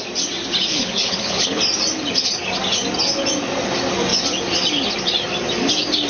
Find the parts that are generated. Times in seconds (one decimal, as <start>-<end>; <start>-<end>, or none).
0.7-1.6